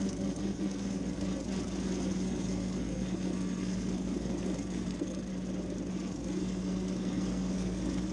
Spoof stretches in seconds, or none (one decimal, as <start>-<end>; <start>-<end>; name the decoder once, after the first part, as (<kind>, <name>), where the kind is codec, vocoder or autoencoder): 0.0-1.3 (codec, SNAC); 1.8-5.3; 5.9-8.1